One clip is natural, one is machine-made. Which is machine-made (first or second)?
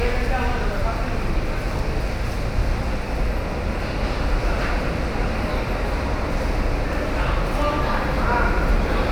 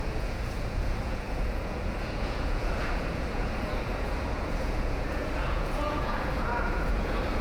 second